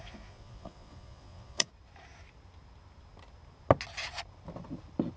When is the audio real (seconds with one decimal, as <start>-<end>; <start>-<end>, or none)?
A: 1.7-5.2